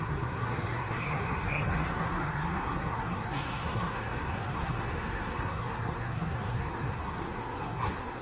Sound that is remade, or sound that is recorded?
remade